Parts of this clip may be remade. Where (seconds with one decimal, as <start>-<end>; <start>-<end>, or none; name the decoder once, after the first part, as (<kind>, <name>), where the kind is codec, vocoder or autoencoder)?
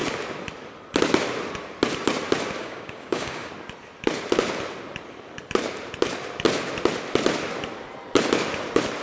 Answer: 2.6-3.5 (codec, DAC)